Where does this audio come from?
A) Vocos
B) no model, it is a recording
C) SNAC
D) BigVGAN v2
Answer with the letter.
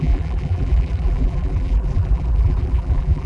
D